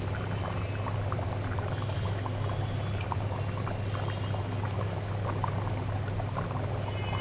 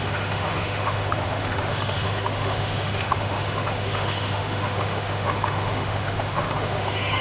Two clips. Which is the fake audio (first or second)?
second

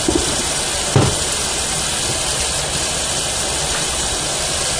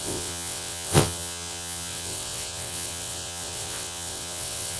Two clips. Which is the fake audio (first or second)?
second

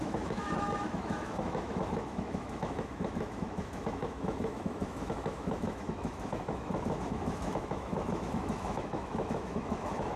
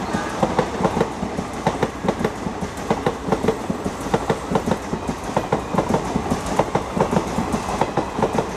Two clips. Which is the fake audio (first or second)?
first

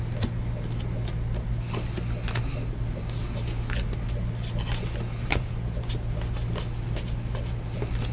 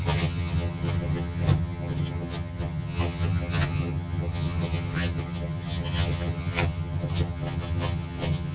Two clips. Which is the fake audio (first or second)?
second